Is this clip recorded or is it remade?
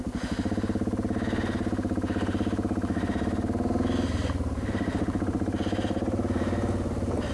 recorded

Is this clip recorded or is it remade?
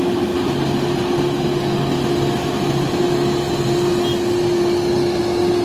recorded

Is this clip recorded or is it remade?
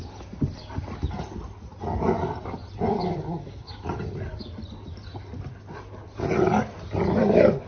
recorded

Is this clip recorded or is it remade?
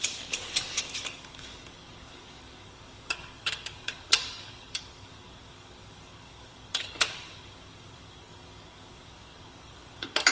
remade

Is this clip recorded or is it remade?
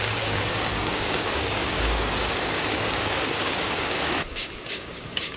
remade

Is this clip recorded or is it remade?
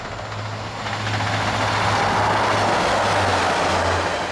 recorded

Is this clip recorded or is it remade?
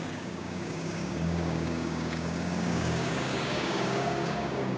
remade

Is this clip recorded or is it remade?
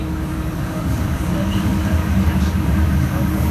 remade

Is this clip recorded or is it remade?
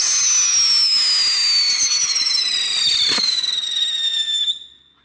recorded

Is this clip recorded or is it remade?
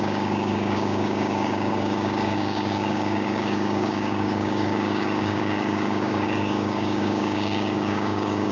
remade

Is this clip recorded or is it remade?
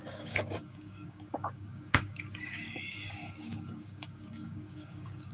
remade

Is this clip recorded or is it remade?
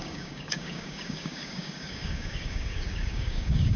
remade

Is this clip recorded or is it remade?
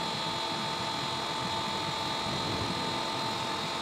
recorded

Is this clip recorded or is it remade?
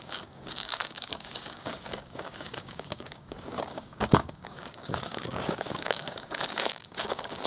remade